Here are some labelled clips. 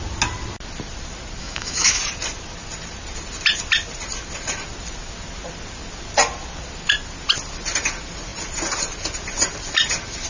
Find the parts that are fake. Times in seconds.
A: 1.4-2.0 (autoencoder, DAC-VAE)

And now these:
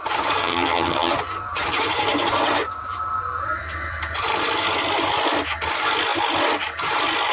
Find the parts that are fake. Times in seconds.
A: 0.4-1.1 (vocoder, HiFi-GAN)

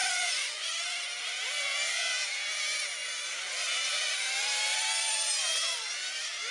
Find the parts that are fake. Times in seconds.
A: 0.0-1.0 (vocoder, Vocos)

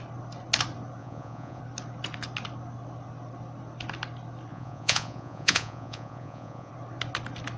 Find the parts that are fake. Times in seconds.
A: 1.0-1.6 (vocoder, Vocos); 4.5-6.7

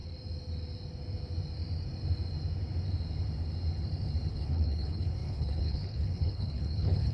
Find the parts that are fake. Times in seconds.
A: 4.3-7.1 (codec, HILCodec)